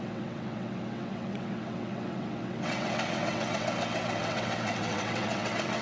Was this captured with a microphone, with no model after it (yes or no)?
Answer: no